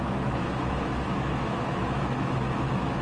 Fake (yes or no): yes